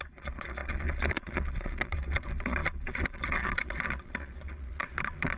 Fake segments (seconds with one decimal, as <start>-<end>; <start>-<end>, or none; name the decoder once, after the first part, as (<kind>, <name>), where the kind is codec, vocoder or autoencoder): 0.0-5.4 (vocoder, Vocos)